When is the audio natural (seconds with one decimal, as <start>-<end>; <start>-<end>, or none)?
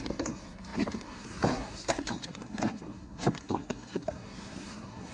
none